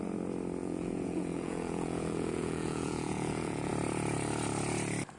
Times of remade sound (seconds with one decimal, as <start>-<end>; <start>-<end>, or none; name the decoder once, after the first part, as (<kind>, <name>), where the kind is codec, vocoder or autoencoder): 0.6-3.7 (vocoder, Vocos)